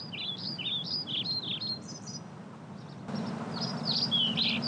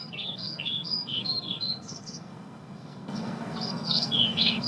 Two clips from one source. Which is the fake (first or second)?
second